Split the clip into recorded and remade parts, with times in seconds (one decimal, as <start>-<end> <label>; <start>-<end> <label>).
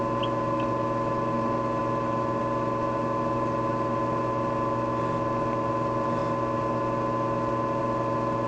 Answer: 0.0-8.5 recorded